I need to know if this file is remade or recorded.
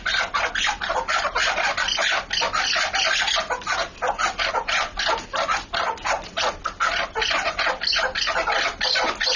recorded